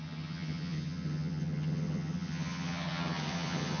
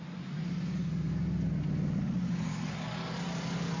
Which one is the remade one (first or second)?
first